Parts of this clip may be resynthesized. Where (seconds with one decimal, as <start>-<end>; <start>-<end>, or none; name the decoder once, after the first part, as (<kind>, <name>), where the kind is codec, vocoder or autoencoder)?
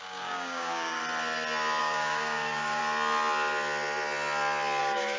0.0-1.0 (codec, DAC); 1.8-2.8; 4.8-5.2